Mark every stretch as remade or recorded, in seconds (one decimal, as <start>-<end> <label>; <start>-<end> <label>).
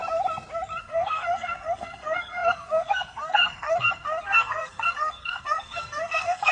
0.0-0.8 recorded; 0.8-6.5 remade